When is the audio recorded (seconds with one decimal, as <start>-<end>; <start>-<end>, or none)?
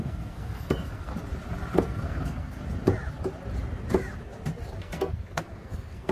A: 1.1-1.7; 2.6-4.8